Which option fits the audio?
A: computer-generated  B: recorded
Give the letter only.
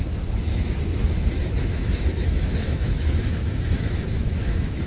A